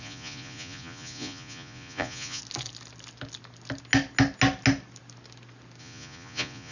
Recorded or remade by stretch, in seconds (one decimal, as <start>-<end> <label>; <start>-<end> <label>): 0.0-2.4 remade; 2.4-5.8 recorded; 5.8-6.7 remade